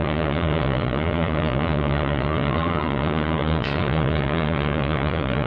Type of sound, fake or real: fake